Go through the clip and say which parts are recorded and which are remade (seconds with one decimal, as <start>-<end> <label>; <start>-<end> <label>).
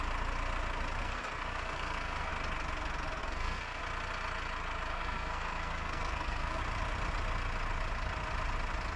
0.0-1.0 recorded; 1.0-2.3 remade; 2.3-3.2 recorded; 3.2-3.8 remade; 3.8-4.9 recorded; 4.9-6.6 remade; 6.6-9.0 recorded